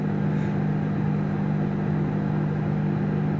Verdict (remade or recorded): recorded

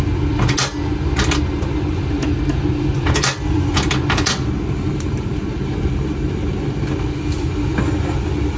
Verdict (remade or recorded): recorded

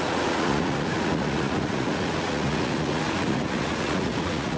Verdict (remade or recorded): remade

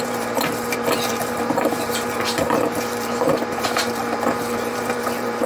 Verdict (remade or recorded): remade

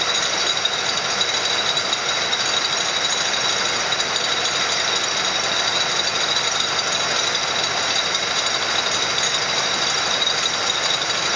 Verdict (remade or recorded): recorded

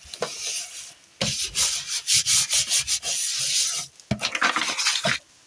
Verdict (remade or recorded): recorded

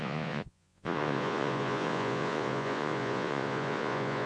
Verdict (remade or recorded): remade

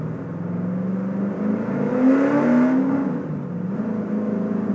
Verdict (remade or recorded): recorded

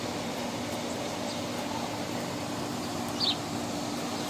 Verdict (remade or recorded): recorded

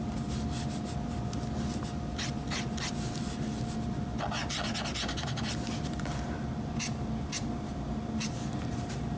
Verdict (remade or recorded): recorded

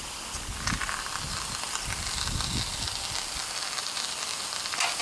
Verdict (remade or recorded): recorded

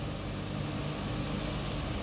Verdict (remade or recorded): recorded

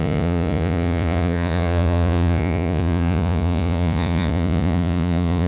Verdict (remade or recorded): remade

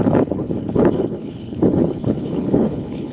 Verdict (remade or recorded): remade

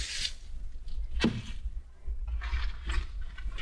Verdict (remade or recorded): recorded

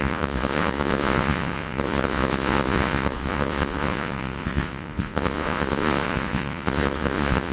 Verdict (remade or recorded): remade